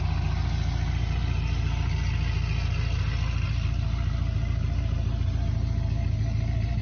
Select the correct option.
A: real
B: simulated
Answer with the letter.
A